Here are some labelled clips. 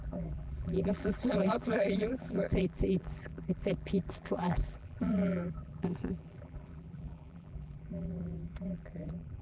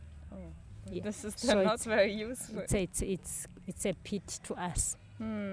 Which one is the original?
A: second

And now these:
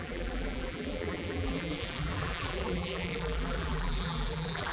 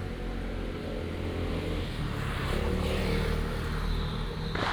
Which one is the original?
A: second